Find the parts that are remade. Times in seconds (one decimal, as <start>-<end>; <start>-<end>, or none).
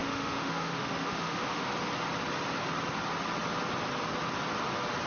0.0-1.7